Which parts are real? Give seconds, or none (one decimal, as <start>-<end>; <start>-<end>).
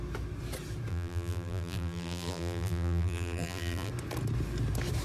0.0-0.9; 3.9-5.0